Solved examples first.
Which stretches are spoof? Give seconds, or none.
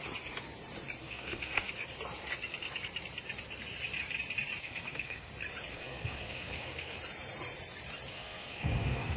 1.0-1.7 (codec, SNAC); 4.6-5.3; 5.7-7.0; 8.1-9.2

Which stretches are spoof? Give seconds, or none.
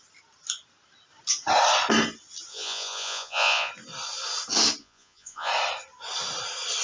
2.5-3.7 (vocoder, Vocos); 4.8-5.5